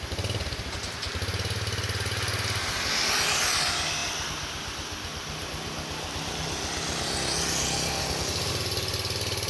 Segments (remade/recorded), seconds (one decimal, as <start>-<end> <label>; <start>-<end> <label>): 0.0-9.5 recorded